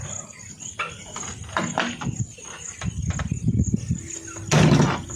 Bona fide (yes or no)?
yes